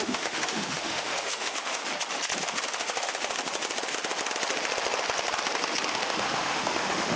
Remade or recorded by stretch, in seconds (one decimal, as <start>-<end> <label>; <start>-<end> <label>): 0.0-1.8 remade; 1.8-2.4 recorded; 2.4-3.1 remade; 3.1-5.9 recorded; 5.9-7.2 remade